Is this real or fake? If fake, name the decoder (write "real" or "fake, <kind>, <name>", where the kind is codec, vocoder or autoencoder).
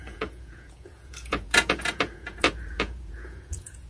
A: fake, vocoder, Vocos